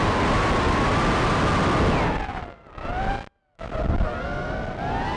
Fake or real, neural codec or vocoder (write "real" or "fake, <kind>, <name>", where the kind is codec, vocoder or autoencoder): real